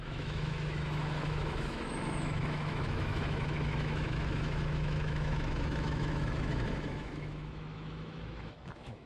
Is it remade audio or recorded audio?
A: remade